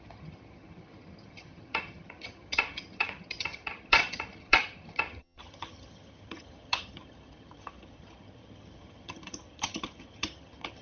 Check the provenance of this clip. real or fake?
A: fake